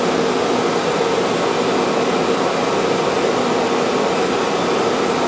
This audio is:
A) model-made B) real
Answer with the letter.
B